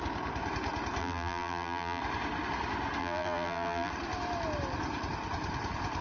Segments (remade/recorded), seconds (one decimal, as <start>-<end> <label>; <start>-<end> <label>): 0.0-1.0 recorded; 1.0-2.0 remade; 2.0-3.0 recorded; 3.0-3.9 remade; 3.9-6.0 recorded